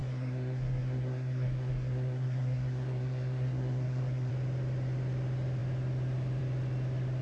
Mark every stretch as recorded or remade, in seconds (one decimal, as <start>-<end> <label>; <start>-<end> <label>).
0.0-4.3 remade; 4.3-7.2 recorded